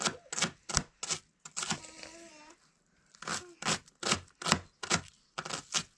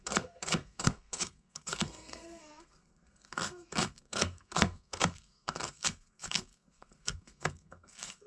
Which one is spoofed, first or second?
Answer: second